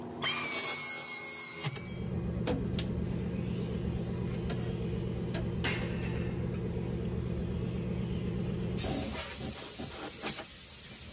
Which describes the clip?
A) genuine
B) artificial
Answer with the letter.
A